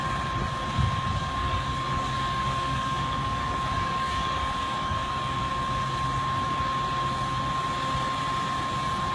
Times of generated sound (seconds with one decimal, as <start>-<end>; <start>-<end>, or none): 1.2-5.5